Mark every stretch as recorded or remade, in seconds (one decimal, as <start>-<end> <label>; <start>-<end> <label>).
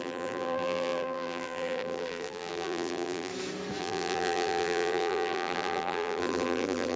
0.0-3.3 remade; 3.3-3.8 recorded; 3.8-7.0 remade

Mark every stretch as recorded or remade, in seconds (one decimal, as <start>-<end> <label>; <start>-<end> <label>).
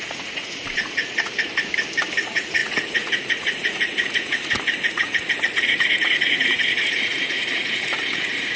0.0-1.3 remade; 1.3-2.2 recorded; 2.2-8.6 remade